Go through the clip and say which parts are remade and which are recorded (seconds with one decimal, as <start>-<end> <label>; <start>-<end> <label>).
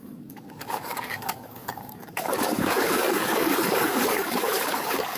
0.0-5.2 remade